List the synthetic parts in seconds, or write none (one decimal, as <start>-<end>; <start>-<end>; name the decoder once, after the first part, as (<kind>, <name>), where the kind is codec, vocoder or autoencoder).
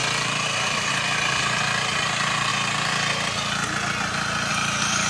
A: 0.0-2.5 (vocoder, BigVGAN v2); 4.5-5.1